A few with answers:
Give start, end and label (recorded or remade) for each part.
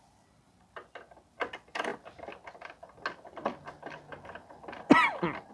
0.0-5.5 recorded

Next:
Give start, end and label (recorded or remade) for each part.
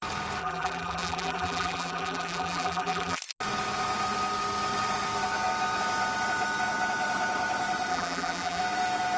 0.0-0.4 recorded; 0.4-3.2 remade; 3.2-7.9 recorded; 7.9-8.6 remade; 8.6-9.2 recorded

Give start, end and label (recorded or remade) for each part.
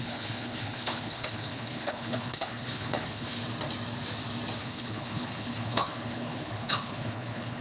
0.0-3.4 remade; 3.4-4.6 recorded; 4.6-7.6 remade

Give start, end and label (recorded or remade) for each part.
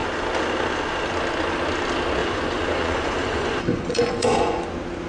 0.0-2.2 recorded; 2.2-4.6 remade; 4.6-5.1 recorded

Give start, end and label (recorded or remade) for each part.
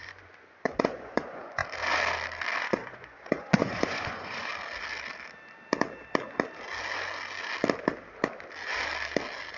0.0-1.6 remade; 1.6-2.6 recorded; 2.6-4.5 remade; 4.5-9.6 recorded